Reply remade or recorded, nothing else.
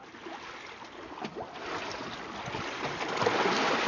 recorded